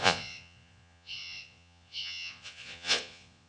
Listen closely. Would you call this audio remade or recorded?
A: remade